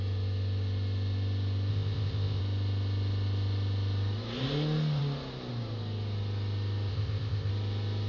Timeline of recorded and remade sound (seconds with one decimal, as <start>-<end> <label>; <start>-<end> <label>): 0.0-1.7 recorded; 1.7-2.4 remade; 2.4-6.9 recorded; 6.9-7.5 remade; 7.5-8.1 recorded